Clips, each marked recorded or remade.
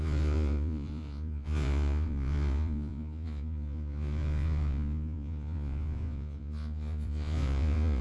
remade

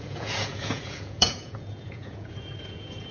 remade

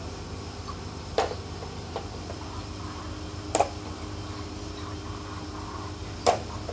recorded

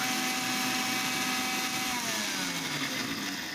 recorded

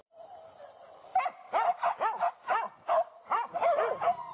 recorded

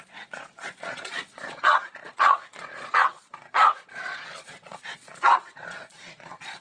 remade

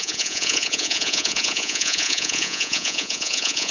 remade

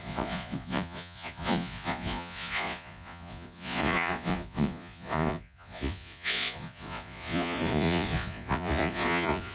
remade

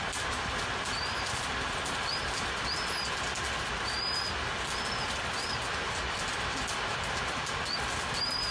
recorded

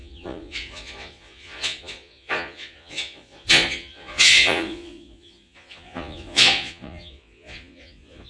remade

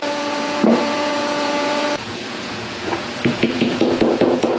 remade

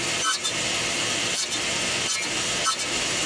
recorded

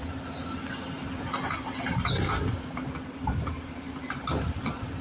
recorded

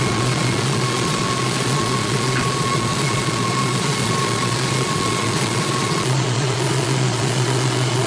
remade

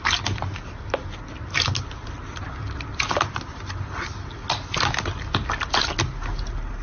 recorded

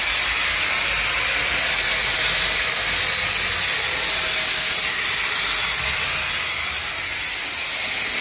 recorded